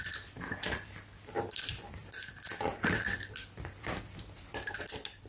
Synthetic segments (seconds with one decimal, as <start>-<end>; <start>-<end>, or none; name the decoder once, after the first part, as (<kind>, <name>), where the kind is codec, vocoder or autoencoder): 2.0-5.3 (vocoder, BigVGAN v2)